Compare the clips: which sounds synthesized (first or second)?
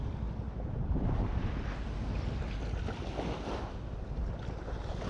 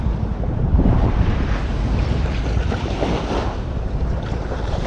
second